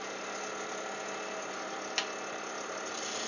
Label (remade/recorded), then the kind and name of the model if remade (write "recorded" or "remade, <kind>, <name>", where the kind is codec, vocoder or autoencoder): recorded